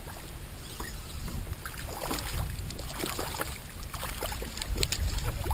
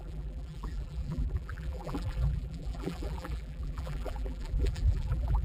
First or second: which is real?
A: first